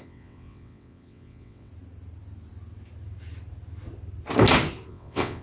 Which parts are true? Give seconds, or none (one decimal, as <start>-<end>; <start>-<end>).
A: 1.7-4.9